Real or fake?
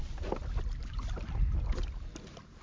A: real